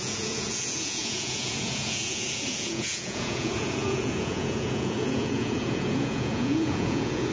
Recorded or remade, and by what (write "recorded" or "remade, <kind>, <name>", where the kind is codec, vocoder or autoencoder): remade, vocoder, Vocos